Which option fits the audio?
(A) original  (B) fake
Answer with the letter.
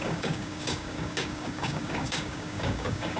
B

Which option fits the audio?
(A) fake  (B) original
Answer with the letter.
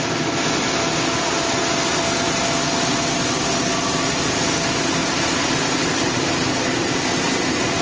B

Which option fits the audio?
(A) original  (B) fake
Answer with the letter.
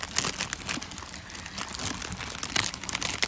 A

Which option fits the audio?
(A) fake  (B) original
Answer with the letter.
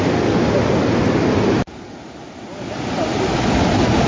B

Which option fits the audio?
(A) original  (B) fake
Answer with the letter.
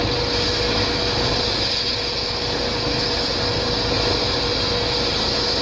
A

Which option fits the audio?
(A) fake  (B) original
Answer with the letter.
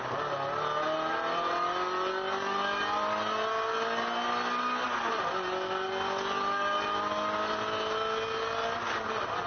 B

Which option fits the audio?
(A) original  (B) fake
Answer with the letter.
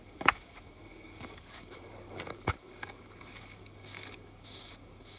B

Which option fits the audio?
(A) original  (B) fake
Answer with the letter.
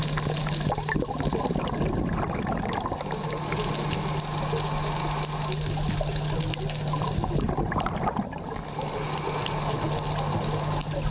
A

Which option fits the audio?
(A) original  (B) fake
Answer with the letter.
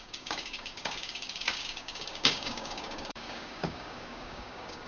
B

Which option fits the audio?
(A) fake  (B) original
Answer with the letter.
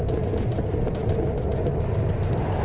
B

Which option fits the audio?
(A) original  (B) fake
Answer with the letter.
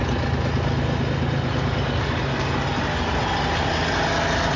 A